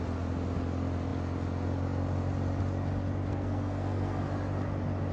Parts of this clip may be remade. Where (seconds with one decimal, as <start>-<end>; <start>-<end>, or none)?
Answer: 3.3-4.2